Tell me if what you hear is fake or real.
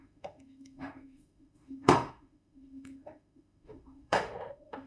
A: fake